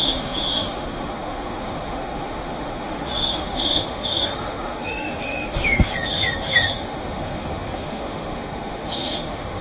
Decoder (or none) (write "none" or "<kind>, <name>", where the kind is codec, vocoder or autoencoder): autoencoder, DAC-VAE